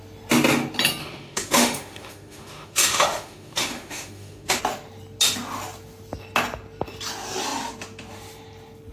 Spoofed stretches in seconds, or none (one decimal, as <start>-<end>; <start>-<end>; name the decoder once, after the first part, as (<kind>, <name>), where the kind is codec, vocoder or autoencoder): 1.0-4.6 (autoencoder, DAC-VAE)